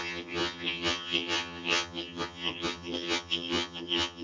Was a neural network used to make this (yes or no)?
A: yes